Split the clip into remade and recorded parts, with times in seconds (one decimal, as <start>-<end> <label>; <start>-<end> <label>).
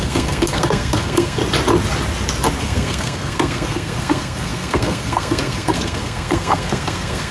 0.0-1.4 remade; 1.4-2.6 recorded; 2.6-7.3 remade